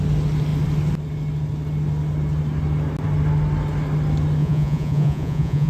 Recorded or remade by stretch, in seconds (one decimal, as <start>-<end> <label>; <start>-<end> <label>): 0.0-4.4 recorded; 4.4-5.7 remade